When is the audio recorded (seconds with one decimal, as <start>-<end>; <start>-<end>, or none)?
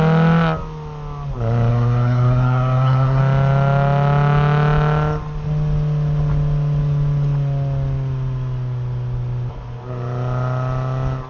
0.0-1.7; 3.2-11.3